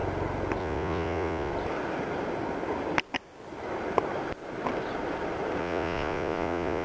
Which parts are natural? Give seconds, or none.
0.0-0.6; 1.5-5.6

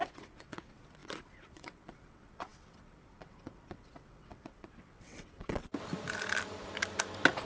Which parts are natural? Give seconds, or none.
5.7-7.5